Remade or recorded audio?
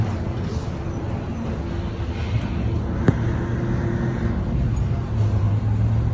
recorded